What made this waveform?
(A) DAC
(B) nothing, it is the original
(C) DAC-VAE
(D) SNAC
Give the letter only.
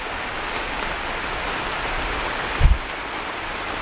B